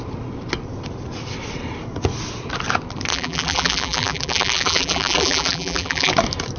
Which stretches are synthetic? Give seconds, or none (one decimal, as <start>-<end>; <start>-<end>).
3.1-6.1